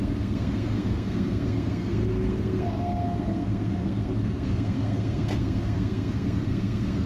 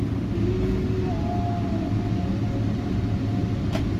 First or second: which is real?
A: second